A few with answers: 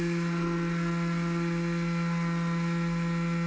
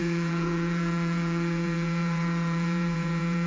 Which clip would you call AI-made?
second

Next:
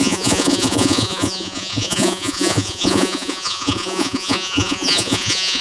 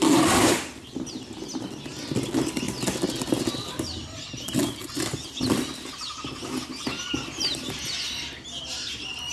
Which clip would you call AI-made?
first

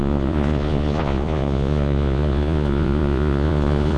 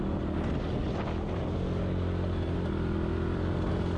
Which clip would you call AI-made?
first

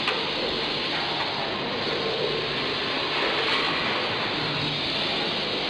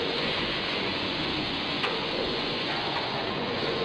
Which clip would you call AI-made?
second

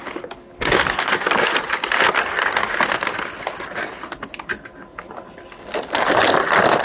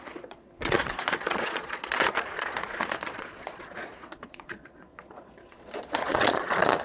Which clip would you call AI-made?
second